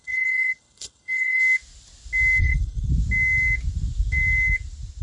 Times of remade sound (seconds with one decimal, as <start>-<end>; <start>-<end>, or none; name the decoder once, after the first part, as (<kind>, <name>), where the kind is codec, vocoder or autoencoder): 0.0-1.4 (codec, HILCodec); 2.4-2.9

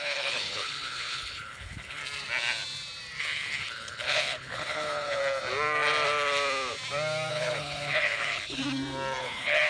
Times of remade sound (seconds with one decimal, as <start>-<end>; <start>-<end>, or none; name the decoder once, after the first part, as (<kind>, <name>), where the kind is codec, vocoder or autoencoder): 0.0-2.0 (codec, HILCodec); 3.2-5.2; 7.3-8.6; 9.2-9.7

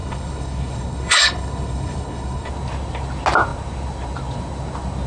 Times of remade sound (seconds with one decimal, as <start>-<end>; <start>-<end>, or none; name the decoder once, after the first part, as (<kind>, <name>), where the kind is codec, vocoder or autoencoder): 0.0-2.5 (codec, HILCodec)

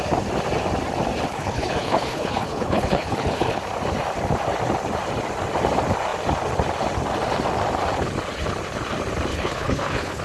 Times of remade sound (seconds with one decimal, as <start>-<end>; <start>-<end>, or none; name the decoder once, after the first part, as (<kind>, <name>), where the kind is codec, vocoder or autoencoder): 1.3-3.6 (codec, HILCodec); 9.3-10.2

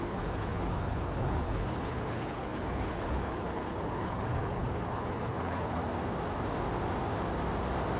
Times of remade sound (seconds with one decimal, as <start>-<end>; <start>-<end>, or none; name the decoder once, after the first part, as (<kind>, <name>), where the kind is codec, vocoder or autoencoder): 0.0-5.8 (codec, HILCodec)

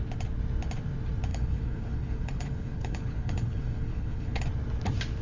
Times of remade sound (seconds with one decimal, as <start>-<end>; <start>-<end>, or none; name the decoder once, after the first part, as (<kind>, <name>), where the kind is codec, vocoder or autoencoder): 1.3-4.4 (codec, HILCodec)

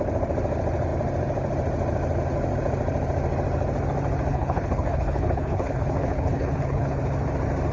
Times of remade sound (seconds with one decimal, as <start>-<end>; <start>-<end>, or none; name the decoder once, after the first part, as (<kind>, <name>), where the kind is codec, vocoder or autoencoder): 4.3-7.0 (codec, HILCodec)

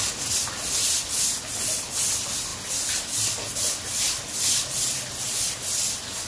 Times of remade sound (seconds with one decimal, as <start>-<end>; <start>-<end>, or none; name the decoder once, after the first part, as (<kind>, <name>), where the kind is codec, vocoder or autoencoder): none